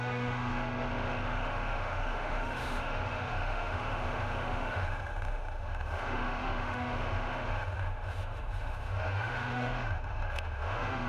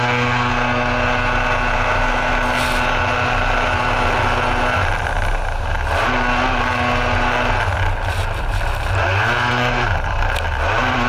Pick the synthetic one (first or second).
first